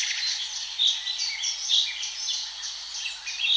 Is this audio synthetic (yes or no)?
no